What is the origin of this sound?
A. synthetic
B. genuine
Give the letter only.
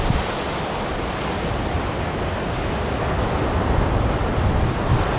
B